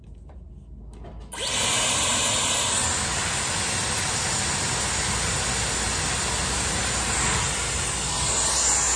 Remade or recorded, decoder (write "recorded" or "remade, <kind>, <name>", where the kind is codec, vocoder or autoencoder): recorded